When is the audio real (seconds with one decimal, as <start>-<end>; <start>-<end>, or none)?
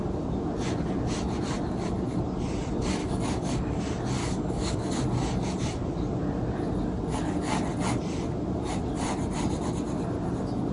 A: 0.0-3.0; 3.8-4.2; 4.9-10.7